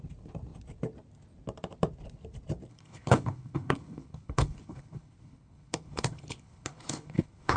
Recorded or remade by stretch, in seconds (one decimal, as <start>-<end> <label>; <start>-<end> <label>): 0.0-2.7 recorded; 2.7-7.6 remade